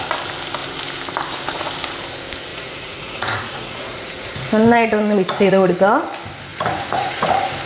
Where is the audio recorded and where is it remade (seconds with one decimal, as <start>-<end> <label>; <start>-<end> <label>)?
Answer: 0.0-2.5 recorded; 2.5-5.8 remade; 5.8-6.5 recorded; 6.5-7.3 remade; 7.3-7.7 recorded